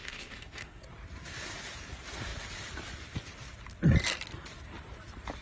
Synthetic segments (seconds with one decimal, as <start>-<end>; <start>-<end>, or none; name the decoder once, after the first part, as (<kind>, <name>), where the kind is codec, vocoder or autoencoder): 0.0-0.8 (autoencoder, DAC-VAE)